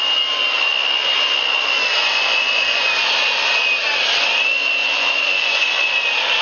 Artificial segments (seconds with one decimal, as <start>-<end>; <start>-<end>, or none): 2.0-2.9; 4.8-5.7